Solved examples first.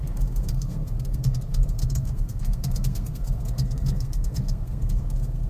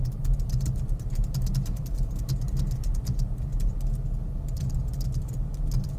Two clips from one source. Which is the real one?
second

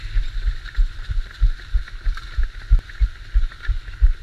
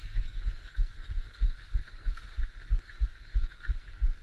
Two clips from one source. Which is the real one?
first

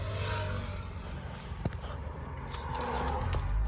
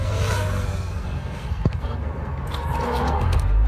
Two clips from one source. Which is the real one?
first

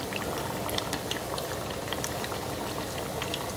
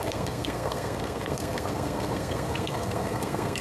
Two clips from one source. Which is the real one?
first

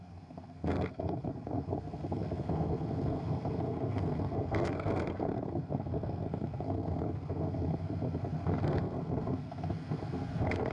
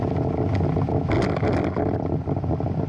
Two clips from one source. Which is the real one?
second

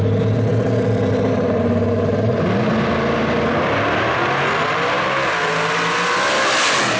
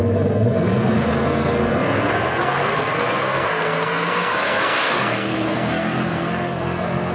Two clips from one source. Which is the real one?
first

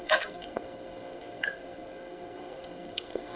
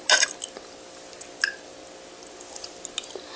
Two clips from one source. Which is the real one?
second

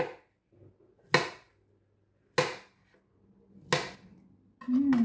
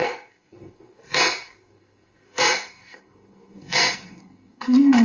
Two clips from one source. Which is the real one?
first